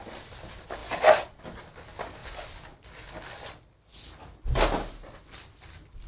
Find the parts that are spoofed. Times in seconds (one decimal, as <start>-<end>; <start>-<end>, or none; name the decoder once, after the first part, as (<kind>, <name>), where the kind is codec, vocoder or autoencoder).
none